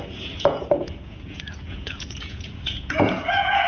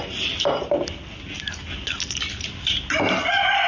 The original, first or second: second